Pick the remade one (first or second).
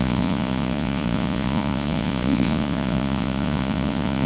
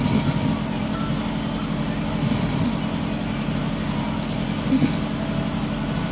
first